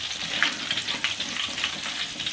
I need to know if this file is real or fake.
real